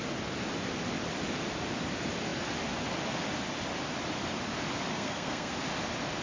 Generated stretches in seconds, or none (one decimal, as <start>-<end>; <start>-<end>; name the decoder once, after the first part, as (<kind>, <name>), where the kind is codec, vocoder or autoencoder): 4.9-5.5 (codec, SNAC)